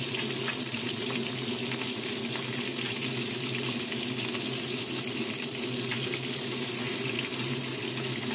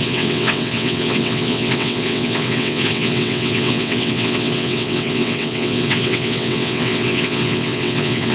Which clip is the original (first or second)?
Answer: first